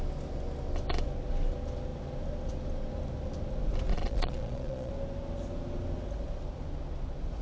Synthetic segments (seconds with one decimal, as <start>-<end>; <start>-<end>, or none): 3.9-4.9